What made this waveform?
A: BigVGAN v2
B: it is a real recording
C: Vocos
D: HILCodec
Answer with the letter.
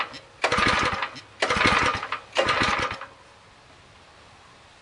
B